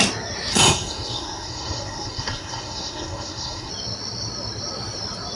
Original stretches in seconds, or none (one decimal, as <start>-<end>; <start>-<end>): 0.0-0.5; 3.7-5.3